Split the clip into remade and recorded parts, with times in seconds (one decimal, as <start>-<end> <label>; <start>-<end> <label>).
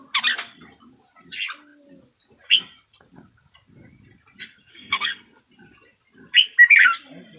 0.0-4.7 recorded; 4.7-5.4 remade; 5.4-7.4 recorded